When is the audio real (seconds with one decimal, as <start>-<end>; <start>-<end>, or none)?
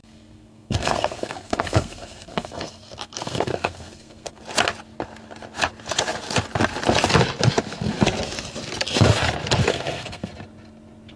4.4-9.7; 10.3-11.2